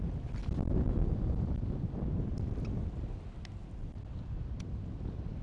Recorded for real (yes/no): yes